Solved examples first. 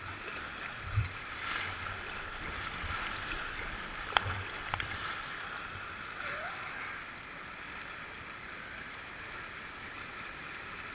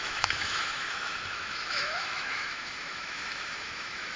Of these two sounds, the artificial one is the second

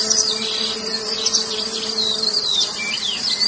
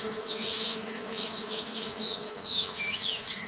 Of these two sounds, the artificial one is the second